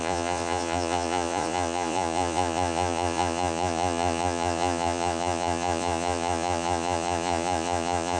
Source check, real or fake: fake